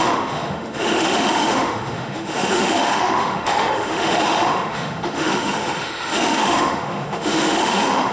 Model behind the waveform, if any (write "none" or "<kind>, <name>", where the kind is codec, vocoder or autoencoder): autoencoder, DAC-VAE